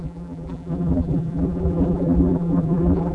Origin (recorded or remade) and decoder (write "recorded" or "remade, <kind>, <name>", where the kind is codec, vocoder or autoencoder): remade, vocoder, BigVGAN v2